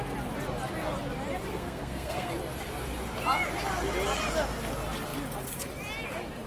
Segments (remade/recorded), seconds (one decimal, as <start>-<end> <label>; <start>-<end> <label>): 0.0-1.5 recorded; 1.5-2.3 remade; 2.3-6.5 recorded